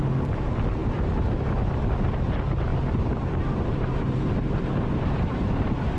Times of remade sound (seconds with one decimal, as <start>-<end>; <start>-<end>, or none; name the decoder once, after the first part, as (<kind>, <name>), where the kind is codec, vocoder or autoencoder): 2.7-6.0 (vocoder, BigVGAN v2)